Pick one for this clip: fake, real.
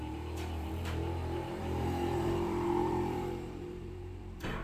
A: fake